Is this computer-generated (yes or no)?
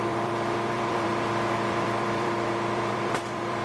yes